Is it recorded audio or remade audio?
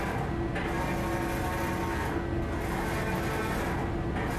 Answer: recorded